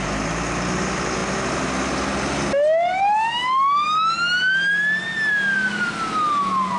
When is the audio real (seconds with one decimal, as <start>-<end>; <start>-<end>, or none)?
0.0-6.8